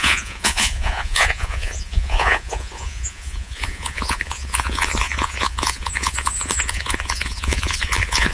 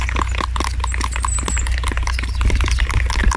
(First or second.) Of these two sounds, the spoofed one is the first